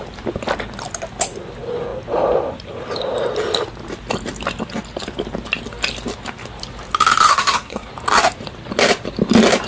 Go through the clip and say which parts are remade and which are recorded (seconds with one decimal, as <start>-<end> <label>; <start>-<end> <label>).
0.0-7.3 recorded; 7.3-7.9 remade; 7.9-9.7 recorded